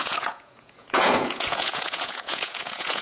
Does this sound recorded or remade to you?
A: remade